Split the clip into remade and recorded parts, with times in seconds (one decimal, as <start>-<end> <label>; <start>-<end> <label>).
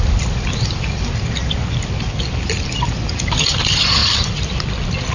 0.0-5.1 recorded